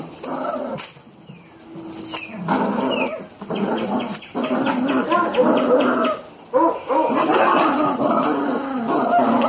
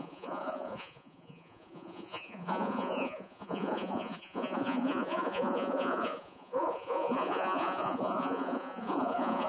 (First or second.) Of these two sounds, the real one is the first